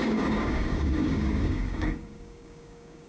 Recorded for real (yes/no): no